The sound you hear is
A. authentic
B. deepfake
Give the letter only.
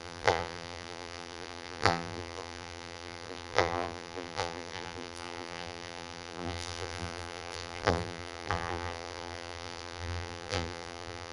B